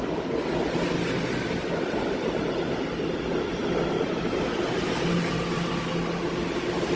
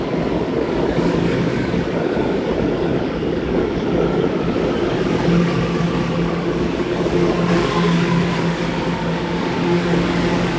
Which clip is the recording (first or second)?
first